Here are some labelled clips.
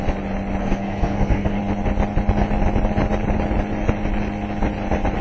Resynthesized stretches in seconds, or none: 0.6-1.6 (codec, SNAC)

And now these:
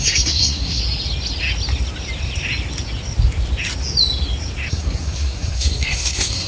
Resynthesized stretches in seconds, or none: 0.0-0.8 (codec, SNAC); 4.7-6.5